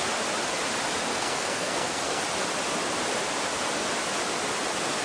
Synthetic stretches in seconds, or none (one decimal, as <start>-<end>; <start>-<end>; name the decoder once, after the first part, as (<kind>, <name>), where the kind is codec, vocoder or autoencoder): 1.1-2.2 (codec, SNAC)

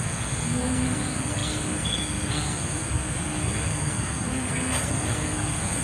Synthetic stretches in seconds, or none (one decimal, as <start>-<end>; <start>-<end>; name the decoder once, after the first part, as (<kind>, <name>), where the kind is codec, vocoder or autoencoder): 0.0-5.8 (codec, SNAC)

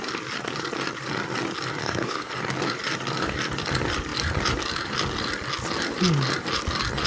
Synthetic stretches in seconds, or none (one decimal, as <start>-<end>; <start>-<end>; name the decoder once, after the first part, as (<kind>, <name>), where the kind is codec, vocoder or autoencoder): 1.8-2.3 (codec, SNAC)

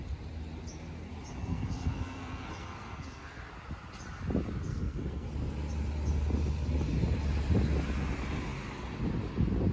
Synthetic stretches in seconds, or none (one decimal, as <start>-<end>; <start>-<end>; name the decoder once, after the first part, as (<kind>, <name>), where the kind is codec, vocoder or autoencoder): 1.4-3.4 (codec, SNAC); 4.7-5.3

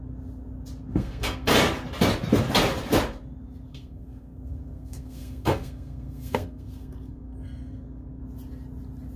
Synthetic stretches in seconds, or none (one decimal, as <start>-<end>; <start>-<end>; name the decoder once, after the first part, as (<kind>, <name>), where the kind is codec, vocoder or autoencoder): 0.9-1.5 (codec, SNAC); 3.7-8.2

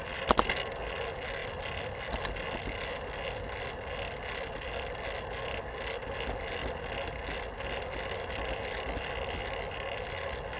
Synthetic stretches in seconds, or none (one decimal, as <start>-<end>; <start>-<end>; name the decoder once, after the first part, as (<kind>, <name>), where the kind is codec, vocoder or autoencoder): none